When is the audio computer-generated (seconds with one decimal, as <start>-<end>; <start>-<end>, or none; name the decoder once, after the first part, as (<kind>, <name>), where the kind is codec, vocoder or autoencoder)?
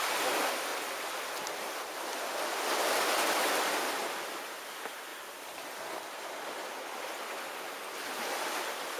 none